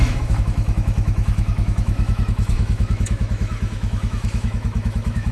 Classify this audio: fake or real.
fake